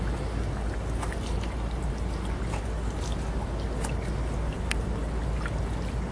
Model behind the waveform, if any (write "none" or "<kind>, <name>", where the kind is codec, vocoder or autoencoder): none